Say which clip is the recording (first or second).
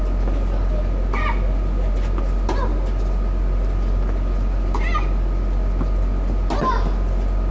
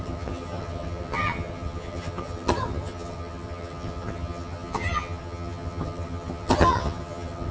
first